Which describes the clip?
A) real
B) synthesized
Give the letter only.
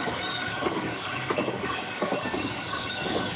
B